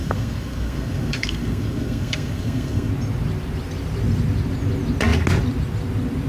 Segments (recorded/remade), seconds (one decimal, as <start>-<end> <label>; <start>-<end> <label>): 0.0-2.9 remade; 2.9-6.3 recorded